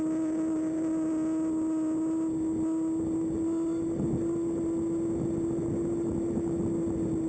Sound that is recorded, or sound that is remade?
recorded